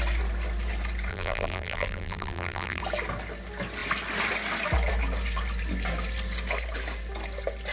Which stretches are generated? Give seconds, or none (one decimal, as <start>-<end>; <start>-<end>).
1.1-2.8